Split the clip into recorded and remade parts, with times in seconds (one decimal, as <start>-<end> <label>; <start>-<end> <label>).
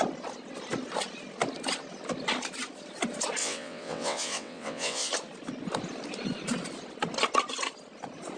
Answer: 0.0-3.4 recorded; 3.4-5.1 remade; 5.1-8.4 recorded